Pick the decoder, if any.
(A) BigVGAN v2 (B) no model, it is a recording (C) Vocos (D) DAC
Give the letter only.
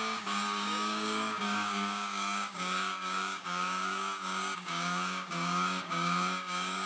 D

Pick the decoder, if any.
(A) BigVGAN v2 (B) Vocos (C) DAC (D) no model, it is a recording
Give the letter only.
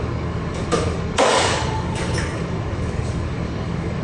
C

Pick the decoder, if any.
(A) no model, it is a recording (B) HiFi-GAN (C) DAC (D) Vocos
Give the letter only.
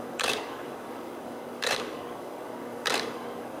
C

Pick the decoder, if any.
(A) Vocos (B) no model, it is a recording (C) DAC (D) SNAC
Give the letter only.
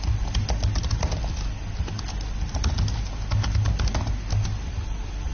B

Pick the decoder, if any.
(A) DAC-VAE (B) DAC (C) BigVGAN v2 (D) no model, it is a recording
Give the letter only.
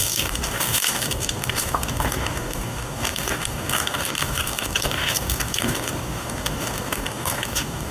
B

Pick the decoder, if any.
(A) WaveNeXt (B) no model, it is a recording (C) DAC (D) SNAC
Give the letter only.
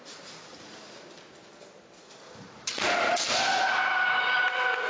B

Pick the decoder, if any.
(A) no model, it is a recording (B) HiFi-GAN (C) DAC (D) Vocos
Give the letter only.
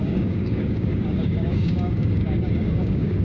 C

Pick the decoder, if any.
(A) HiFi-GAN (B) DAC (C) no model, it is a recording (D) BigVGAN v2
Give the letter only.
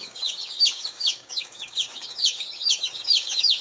B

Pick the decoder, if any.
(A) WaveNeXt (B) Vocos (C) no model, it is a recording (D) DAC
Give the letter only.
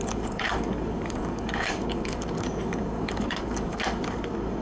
D